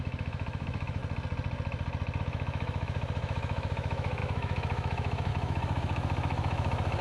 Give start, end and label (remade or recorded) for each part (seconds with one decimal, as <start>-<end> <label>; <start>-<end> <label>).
0.0-1.0 remade; 1.0-2.2 recorded; 2.2-7.0 remade